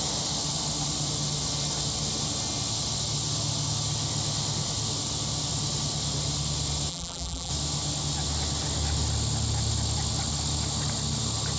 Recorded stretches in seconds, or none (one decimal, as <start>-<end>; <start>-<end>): 0.0-6.9; 7.5-11.6